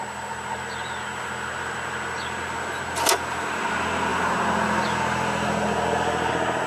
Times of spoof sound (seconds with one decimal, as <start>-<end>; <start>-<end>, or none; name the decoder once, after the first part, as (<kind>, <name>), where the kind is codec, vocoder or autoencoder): none